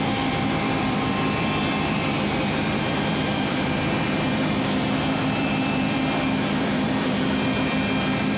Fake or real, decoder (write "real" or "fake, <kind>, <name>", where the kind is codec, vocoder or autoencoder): fake, vocoder, BigVGAN v2